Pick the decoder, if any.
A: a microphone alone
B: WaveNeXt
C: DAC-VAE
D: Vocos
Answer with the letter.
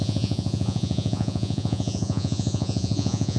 D